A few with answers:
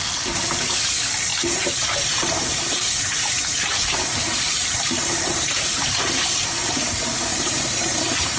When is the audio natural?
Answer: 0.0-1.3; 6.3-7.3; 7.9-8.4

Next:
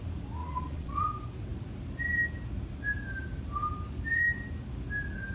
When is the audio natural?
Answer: 0.0-0.4; 1.0-5.3